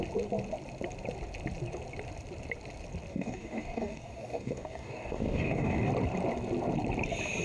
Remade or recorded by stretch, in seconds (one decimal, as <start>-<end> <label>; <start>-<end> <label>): 0.0-3.1 recorded; 3.1-5.9 remade; 5.9-7.4 recorded